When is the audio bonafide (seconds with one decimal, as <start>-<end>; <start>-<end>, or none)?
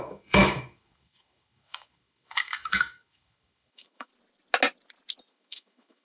4.1-5.3